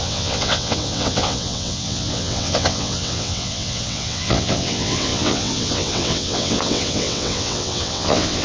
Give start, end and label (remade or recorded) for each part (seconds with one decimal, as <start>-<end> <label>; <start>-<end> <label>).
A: 0.0-8.4 remade